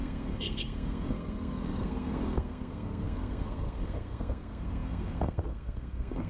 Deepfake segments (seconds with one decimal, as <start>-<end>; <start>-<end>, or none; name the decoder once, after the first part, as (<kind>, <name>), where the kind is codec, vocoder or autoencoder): 0.0-6.3 (codec, SNAC)

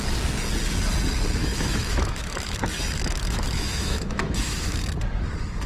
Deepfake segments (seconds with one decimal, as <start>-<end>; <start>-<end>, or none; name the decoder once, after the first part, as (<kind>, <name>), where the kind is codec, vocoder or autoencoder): 1.4-4.8 (autoencoder, DAC-VAE)